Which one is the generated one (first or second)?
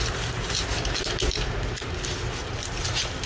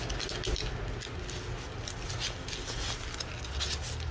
first